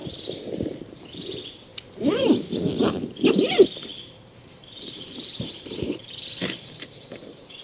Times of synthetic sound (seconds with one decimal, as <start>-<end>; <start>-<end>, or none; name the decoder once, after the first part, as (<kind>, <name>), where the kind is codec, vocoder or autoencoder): 0.8-1.7 (vocoder, BigVGAN v2); 2.8-7.6